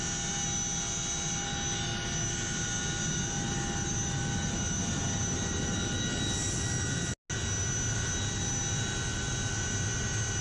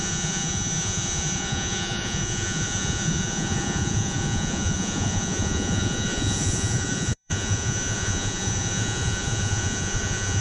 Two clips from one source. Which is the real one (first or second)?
first